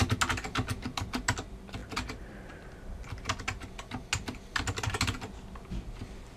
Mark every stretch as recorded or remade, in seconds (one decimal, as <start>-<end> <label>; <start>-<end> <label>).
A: 0.0-1.8 recorded; 1.8-3.7 remade; 3.7-6.4 recorded

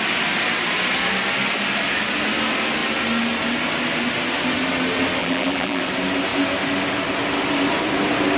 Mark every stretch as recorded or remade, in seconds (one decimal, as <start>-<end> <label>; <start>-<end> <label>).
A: 0.0-5.2 recorded; 5.2-5.8 remade; 5.8-8.4 recorded

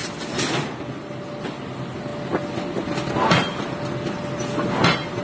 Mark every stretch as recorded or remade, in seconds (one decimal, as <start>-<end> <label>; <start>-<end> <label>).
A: 0.0-0.8 remade; 0.8-5.2 recorded

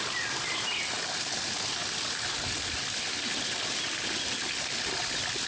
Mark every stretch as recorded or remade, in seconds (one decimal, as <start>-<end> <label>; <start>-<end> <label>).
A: 0.0-5.5 recorded

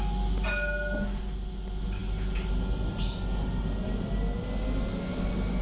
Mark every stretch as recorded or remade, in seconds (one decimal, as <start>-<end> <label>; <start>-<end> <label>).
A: 0.0-5.6 recorded

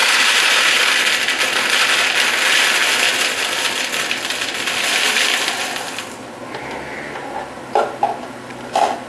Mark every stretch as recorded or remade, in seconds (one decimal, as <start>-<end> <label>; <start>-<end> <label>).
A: 0.0-0.8 remade; 0.8-9.1 recorded

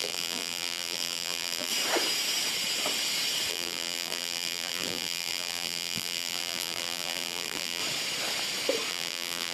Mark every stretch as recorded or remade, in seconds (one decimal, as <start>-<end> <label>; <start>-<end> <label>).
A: 0.0-1.7 remade; 1.7-3.5 recorded; 3.5-7.8 remade; 7.8-8.9 recorded; 8.9-9.5 remade